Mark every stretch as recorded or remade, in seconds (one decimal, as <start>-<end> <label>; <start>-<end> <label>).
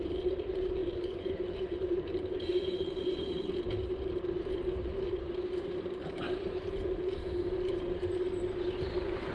0.0-7.4 remade; 7.4-8.9 recorded; 8.9-9.3 remade